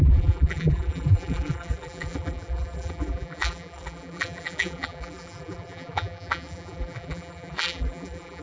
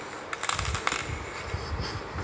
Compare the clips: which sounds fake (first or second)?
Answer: first